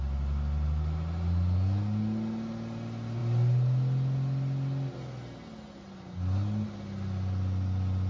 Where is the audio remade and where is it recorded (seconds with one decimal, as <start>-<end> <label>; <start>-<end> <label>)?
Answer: 0.0-8.1 recorded